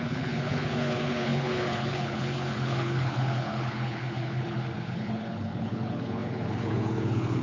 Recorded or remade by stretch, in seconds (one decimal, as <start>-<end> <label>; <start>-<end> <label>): 0.0-7.4 remade